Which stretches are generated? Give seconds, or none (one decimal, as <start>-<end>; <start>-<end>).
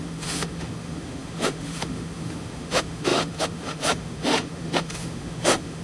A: 0.0-5.8